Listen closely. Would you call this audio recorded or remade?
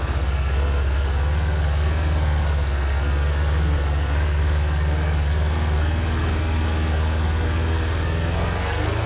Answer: remade